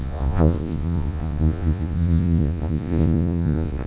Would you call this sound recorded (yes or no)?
no